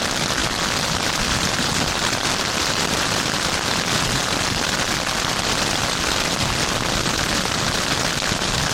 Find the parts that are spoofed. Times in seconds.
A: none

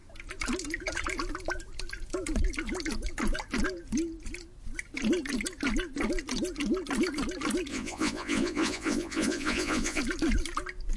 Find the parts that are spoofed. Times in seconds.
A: 7.7-10.0 (vocoder, Vocos)

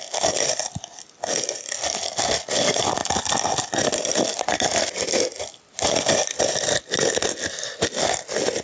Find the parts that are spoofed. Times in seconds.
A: none

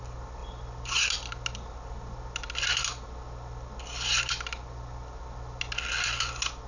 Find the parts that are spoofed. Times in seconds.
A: none

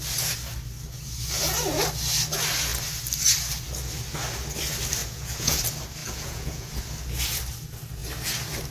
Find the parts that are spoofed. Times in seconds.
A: 5.0-5.6 (vocoder, Vocos); 6.0-6.8